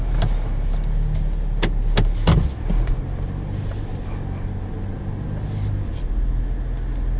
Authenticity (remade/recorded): recorded